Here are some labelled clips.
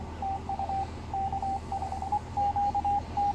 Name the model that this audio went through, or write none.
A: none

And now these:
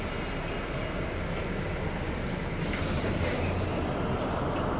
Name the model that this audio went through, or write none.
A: none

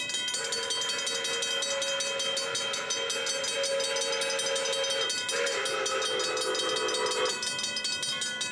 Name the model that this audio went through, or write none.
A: none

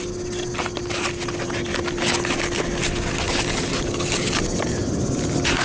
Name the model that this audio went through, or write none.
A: none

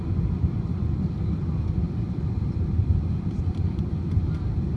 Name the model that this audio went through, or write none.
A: none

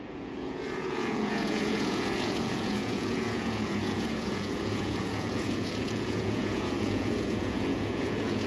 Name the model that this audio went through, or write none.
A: vocoder, Vocos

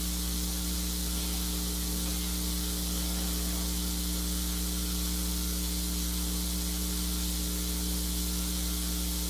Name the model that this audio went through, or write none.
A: none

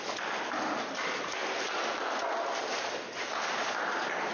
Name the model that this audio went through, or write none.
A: none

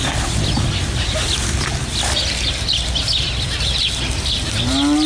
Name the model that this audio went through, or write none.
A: none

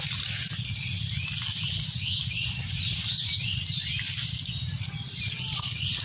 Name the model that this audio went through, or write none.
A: none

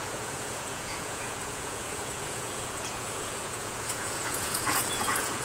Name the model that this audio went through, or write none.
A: vocoder, Vocos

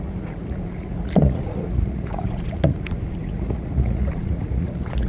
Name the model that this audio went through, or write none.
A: vocoder, Vocos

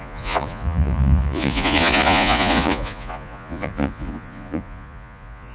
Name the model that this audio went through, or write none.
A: vocoder, Vocos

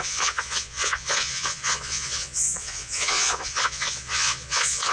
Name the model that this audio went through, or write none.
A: vocoder, Vocos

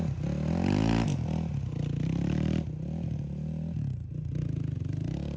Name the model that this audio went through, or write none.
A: none